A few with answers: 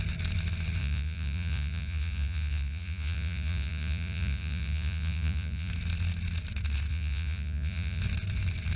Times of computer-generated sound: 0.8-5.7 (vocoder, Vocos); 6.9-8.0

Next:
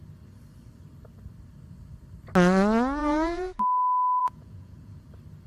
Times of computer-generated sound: 3.0-3.6 (vocoder, Vocos); 4.2-5.1

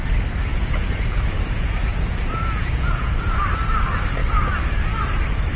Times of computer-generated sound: 0.5-3.3 (vocoder, Vocos)

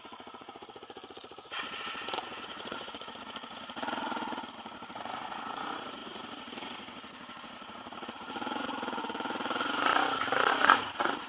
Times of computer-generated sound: 0.0-9.9 (vocoder, Vocos); 10.5-11.3

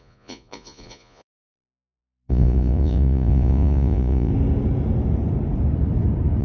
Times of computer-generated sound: 0.0-4.3 (vocoder, Vocos)

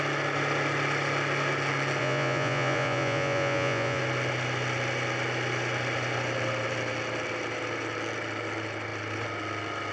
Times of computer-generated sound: 2.0-4.0 (vocoder, Vocos)

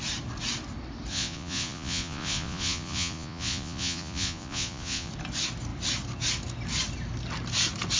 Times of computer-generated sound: 1.1-5.1 (vocoder, Vocos)

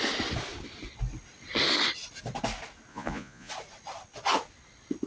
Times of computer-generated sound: 2.9-3.5 (vocoder, Vocos)